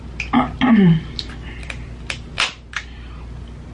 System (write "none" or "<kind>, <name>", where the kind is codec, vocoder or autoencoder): none